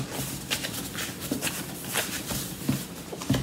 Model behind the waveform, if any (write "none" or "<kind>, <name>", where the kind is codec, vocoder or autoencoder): none